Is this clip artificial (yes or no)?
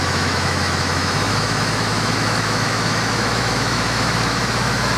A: yes